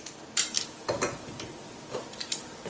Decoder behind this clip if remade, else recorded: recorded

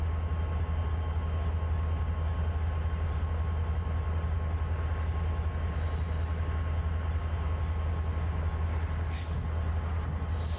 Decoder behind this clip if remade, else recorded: recorded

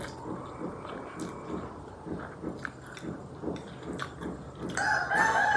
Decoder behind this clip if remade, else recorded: recorded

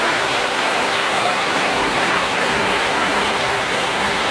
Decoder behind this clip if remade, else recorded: remade, codec, SNAC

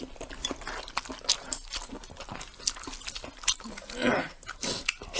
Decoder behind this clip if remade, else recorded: recorded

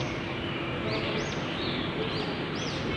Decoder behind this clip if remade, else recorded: recorded